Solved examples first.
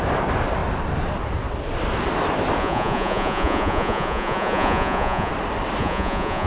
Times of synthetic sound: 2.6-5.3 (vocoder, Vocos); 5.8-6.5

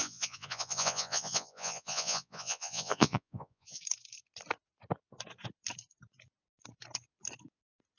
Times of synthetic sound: 0.0-3.8 (vocoder, Vocos)

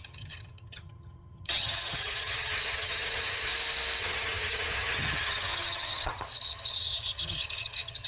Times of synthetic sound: 0.0-3.5 (vocoder, HiFi-GAN); 4.0-8.1

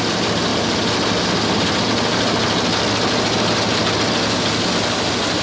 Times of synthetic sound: none

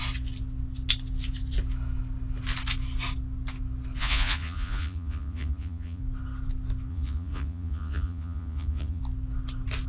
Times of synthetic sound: 4.0-6.0 (vocoder, Vocos); 6.9-9.0

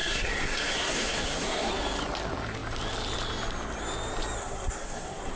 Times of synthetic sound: 0.0-1.7 (codec, SNAC); 4.4-5.4